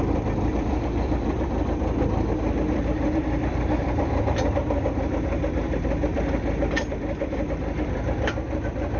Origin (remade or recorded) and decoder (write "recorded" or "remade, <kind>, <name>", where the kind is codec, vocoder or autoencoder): remade, vocoder, BigVGAN v2